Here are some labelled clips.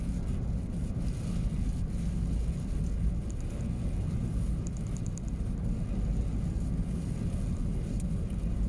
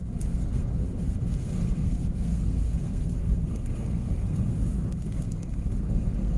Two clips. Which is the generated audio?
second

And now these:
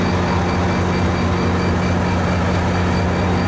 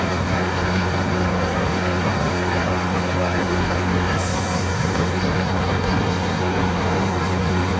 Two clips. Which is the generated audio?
second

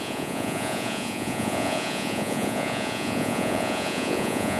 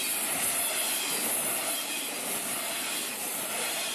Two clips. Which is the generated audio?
first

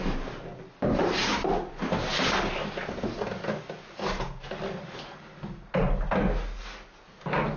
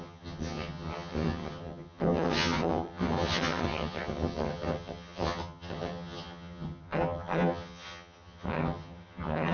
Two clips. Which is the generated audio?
second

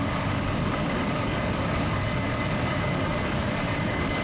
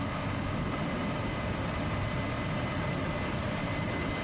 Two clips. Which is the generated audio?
first